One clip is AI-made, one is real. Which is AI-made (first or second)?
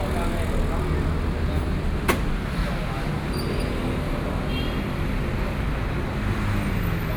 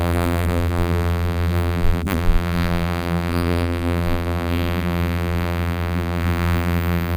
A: second